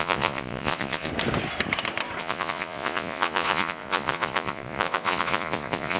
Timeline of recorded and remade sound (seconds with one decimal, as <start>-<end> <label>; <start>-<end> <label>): 0.0-1.1 remade; 1.1-2.2 recorded; 2.2-6.0 remade